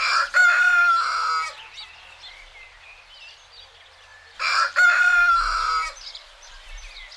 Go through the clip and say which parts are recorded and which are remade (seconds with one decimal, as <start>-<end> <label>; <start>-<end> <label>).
0.0-4.1 recorded; 4.1-6.5 remade; 6.5-7.2 recorded